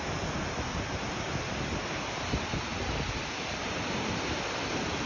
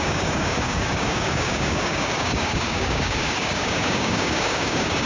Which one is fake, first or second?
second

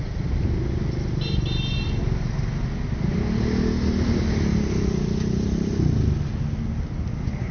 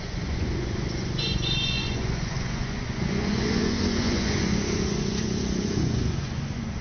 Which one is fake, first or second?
second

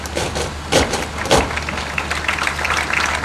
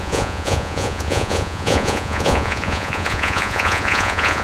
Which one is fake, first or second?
second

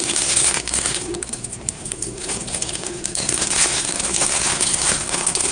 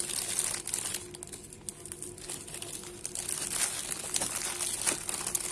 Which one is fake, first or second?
first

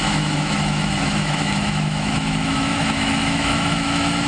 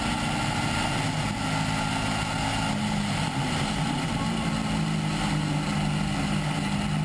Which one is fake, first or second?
first